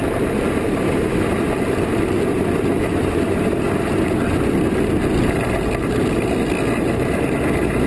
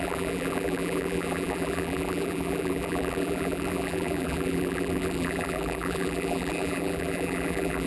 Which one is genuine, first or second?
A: first